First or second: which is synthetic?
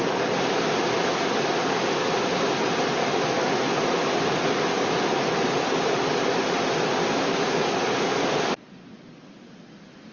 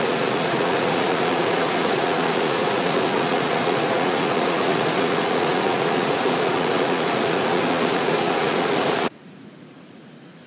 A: second